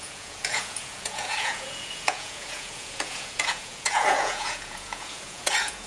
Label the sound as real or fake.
fake